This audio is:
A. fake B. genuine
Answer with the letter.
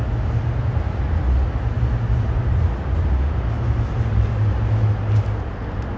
B